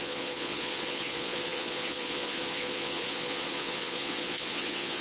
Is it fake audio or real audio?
fake